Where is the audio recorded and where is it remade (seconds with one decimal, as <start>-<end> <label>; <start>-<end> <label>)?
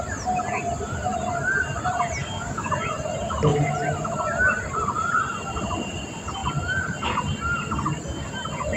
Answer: 0.0-2.2 recorded; 2.2-2.7 remade; 2.7-8.8 recorded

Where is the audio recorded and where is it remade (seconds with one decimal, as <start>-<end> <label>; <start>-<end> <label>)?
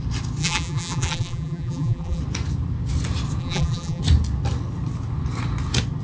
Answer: 0.0-0.4 recorded; 0.4-2.2 remade; 2.2-3.4 recorded; 3.4-4.0 remade; 4.0-6.0 recorded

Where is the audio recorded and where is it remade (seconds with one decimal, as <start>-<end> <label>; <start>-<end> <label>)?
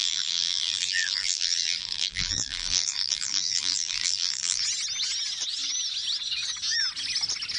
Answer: 0.0-4.6 remade; 4.6-7.6 recorded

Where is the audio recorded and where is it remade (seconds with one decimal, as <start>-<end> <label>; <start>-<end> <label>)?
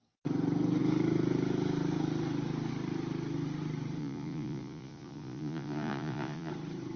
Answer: 0.0-4.0 recorded; 4.0-6.5 remade; 6.5-7.0 recorded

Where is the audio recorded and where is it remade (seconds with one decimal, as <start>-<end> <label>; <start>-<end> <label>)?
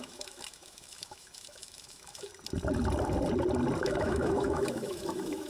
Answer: 0.0-2.3 remade; 2.3-3.8 recorded; 3.8-5.5 remade